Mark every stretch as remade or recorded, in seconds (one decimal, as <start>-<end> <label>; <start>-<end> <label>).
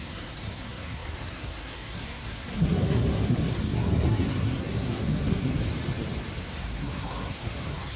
0.0-5.6 remade; 5.6-6.4 recorded; 6.4-8.0 remade